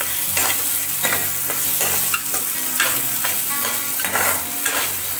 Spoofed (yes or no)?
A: no